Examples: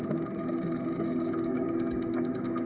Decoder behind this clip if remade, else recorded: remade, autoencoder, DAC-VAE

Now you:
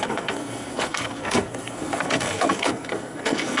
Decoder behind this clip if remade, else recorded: remade, codec, SNAC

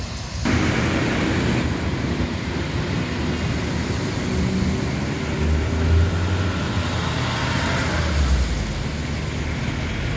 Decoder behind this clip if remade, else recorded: recorded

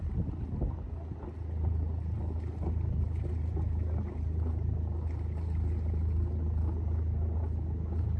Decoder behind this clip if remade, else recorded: recorded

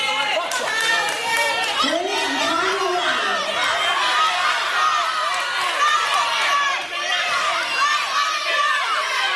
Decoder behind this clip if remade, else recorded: remade, vocoder, BigVGAN v2